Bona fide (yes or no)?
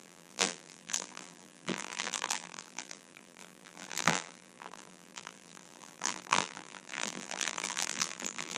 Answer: no